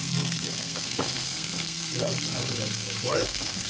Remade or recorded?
remade